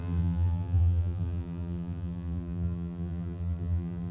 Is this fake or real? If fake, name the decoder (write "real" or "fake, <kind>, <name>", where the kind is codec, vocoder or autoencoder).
fake, vocoder, BigVGAN v2